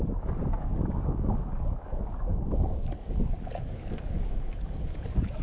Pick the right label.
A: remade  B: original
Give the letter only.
A